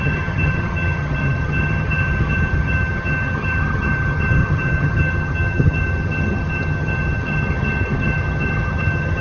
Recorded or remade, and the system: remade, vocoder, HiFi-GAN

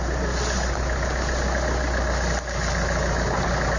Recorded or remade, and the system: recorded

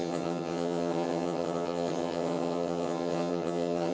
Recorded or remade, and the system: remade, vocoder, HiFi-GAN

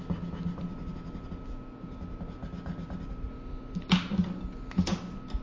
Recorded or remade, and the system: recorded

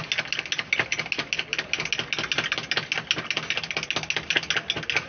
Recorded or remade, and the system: recorded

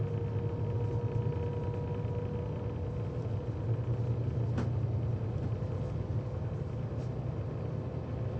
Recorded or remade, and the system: recorded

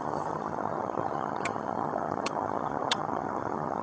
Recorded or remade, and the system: remade, vocoder, HiFi-GAN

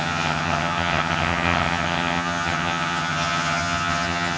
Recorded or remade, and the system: remade, vocoder, HiFi-GAN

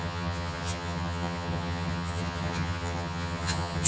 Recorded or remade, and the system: remade, vocoder, HiFi-GAN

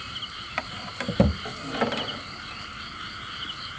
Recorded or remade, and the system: recorded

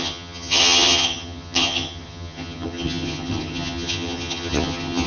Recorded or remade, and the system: remade, vocoder, HiFi-GAN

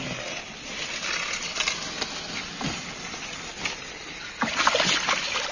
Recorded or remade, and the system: recorded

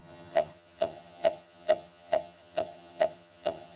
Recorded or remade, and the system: remade, vocoder, HiFi-GAN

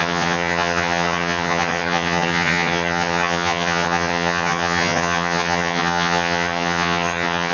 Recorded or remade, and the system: remade, vocoder, HiFi-GAN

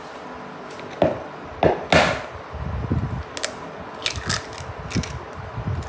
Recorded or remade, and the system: recorded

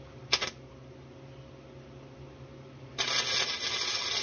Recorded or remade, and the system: recorded